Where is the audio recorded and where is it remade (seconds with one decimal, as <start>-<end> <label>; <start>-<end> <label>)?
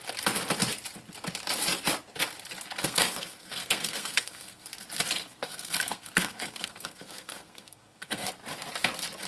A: 0.0-2.8 recorded; 2.8-4.7 remade; 4.7-5.2 recorded; 5.2-8.3 remade; 8.3-9.3 recorded